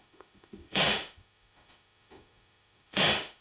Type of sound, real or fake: fake